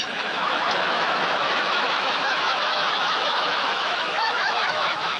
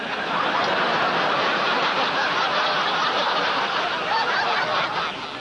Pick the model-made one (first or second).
first